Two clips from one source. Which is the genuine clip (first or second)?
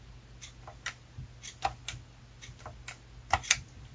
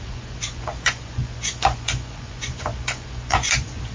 first